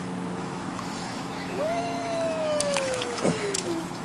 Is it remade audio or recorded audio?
remade